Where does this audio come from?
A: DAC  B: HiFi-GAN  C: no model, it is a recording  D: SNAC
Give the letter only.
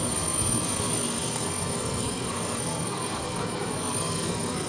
D